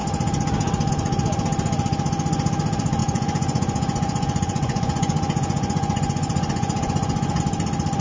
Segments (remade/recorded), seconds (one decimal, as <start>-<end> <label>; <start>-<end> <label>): 0.0-3.0 recorded; 3.0-7.4 remade; 7.4-8.0 recorded